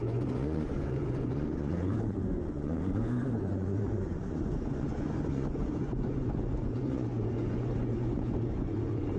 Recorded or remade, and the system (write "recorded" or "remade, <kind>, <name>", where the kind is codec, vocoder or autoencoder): remade, vocoder, Vocos